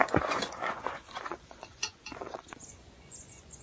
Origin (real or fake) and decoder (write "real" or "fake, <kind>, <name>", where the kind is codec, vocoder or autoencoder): fake, vocoder, Vocos